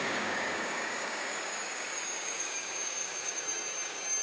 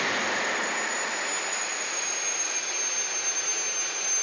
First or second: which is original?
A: second